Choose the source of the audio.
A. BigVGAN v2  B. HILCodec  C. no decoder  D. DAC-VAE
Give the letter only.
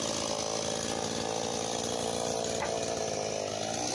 C